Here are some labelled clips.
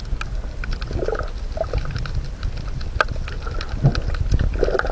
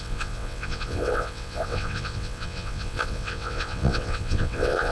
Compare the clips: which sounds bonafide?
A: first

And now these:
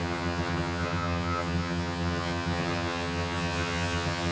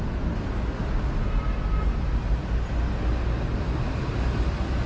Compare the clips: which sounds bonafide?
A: second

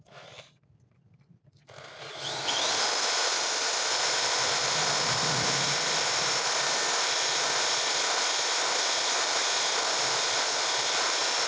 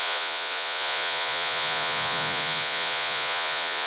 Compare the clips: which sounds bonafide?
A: first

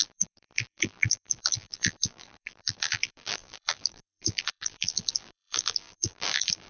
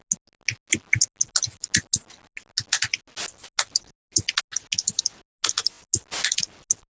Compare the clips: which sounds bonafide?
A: second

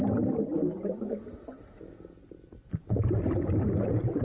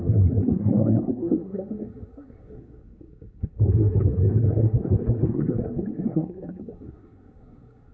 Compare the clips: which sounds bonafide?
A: first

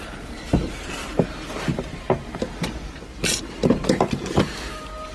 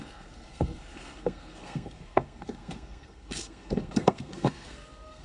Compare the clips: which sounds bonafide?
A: first